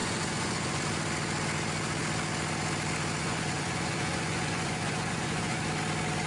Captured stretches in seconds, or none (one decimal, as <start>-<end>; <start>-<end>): 0.8-3.2; 5.6-6.3